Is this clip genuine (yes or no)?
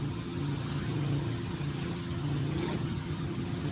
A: no